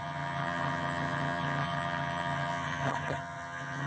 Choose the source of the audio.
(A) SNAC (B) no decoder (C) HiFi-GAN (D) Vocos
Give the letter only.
C